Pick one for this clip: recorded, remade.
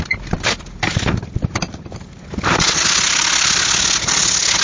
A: recorded